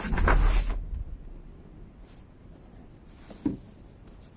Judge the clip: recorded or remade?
recorded